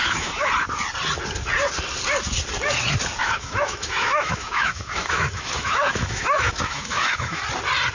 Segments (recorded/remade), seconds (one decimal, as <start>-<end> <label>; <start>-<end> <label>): 0.0-0.5 remade; 0.5-3.2 recorded; 3.2-7.4 remade; 7.4-7.9 recorded